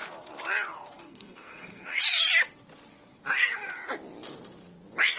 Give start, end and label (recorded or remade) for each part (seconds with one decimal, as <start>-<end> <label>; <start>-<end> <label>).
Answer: 0.0-1.0 recorded; 1.0-1.8 remade; 1.8-5.2 recorded